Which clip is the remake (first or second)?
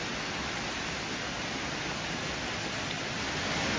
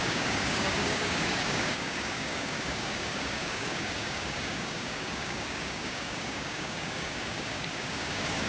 second